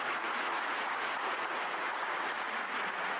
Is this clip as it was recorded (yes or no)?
no